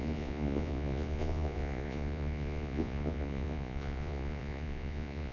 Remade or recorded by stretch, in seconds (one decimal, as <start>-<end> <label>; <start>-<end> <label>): 0.0-5.3 remade